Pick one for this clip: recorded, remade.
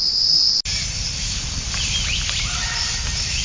recorded